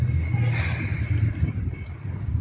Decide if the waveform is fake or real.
real